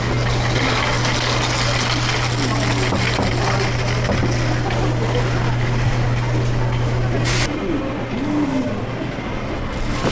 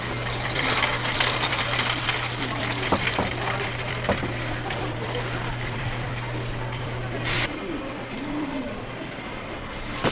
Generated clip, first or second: second